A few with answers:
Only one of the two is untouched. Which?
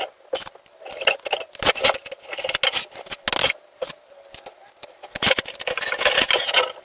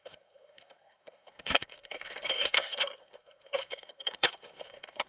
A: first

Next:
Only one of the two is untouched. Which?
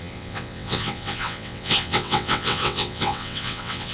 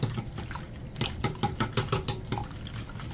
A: second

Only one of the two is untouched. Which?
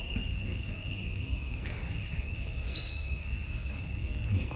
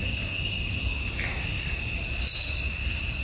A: second